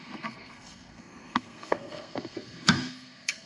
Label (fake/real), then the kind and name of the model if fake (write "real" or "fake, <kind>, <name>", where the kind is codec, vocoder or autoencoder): fake, codec, SNAC